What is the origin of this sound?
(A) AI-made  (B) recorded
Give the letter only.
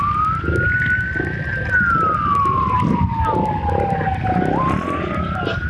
B